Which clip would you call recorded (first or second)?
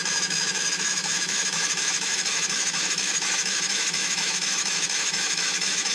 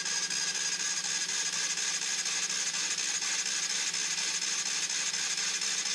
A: second